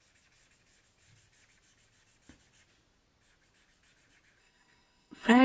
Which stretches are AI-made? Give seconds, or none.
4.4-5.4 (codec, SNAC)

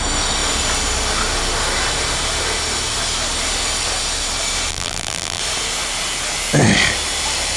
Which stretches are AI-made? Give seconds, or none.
4.7-5.4 (vocoder, BigVGAN v2)

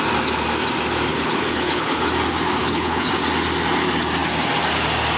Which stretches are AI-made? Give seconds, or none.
1.1-2.1 (codec, HILCodec); 2.6-3.1